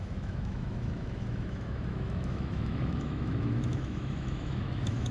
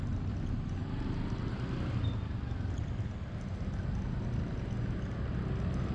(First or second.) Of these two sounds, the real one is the second